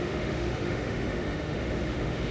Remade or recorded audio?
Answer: remade